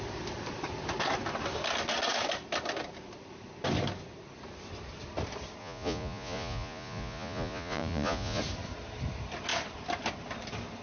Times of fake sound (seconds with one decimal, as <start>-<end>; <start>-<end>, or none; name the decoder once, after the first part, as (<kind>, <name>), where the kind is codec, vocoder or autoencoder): 5.6-8.4 (vocoder, Vocos)